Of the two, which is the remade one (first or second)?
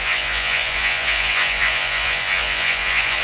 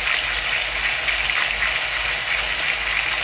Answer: first